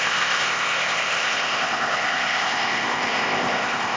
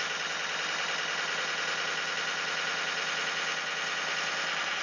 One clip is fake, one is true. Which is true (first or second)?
second